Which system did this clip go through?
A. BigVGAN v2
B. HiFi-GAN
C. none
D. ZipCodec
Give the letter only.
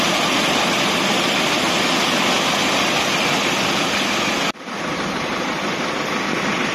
C